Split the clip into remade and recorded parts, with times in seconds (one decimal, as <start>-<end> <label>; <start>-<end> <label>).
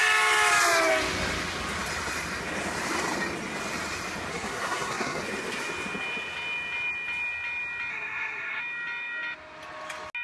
0.0-4.3 recorded; 4.3-5.2 remade; 5.2-7.9 recorded; 7.9-8.6 remade; 8.6-10.2 recorded